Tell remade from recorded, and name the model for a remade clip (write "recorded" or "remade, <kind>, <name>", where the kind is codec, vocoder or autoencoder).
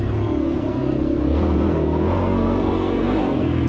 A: remade, codec, SNAC